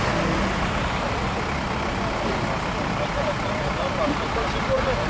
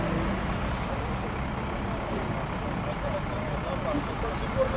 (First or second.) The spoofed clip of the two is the first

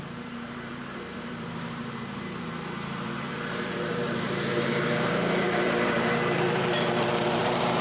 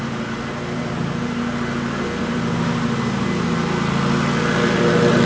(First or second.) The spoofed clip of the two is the first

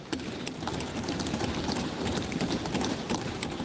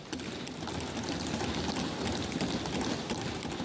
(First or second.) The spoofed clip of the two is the first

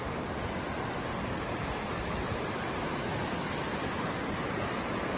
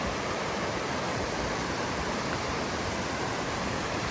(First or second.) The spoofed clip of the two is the second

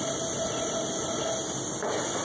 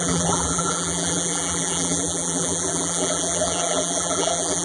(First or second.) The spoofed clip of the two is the second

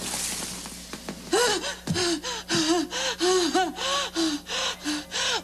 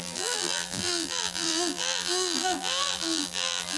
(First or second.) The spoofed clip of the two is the second